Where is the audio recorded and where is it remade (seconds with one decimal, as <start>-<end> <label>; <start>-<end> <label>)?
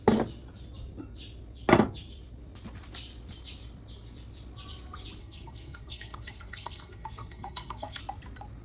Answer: 0.0-5.2 recorded; 5.2-8.0 remade; 8.0-8.6 recorded